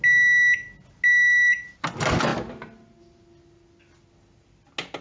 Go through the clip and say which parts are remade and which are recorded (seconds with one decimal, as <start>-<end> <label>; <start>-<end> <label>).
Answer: 0.0-5.0 recorded